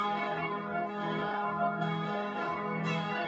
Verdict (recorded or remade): remade